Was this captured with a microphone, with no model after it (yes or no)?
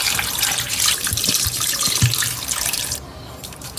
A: no